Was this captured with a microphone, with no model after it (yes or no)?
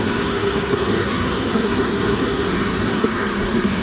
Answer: no